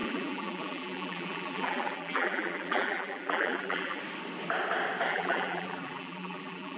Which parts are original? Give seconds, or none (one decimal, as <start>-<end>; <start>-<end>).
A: 4.0-5.1